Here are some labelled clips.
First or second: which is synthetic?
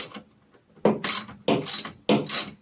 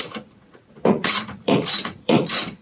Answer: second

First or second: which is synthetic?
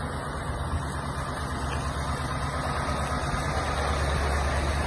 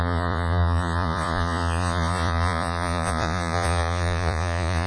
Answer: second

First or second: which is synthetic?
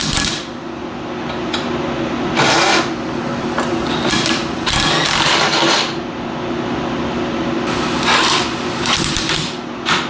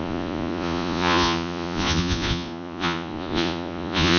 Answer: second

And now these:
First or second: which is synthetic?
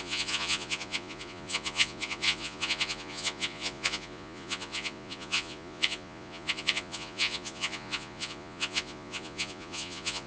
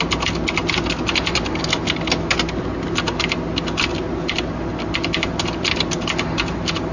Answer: first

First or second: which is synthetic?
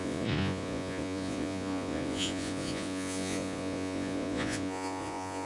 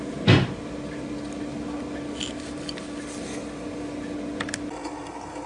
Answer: first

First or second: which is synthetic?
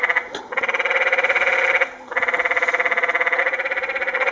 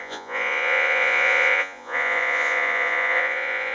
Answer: second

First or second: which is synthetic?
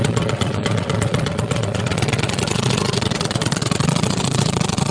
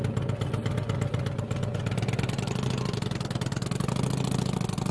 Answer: first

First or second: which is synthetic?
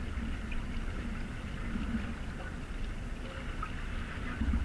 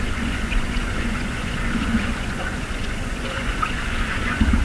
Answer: second